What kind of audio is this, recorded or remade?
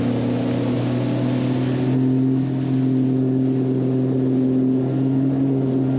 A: recorded